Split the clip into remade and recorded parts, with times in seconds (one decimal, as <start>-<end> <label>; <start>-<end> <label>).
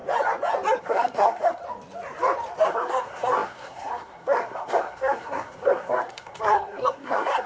0.0-0.8 recorded; 0.8-1.6 remade; 1.6-2.7 recorded; 2.7-7.5 remade